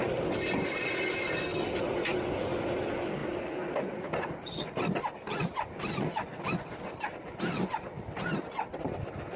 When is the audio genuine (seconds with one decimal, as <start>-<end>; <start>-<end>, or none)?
0.0-1.5; 2.6-3.2; 7.4-9.4